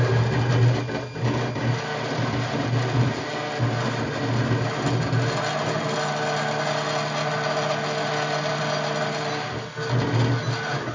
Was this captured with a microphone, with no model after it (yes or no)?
yes